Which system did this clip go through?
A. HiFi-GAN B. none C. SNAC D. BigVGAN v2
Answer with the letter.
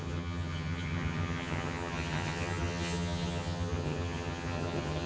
A